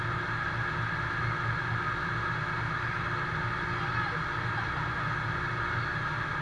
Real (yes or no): yes